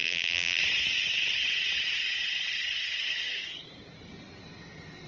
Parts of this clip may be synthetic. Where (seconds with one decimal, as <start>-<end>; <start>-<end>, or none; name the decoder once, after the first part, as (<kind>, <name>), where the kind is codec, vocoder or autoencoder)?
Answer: 0.0-0.6 (vocoder, BigVGAN v2)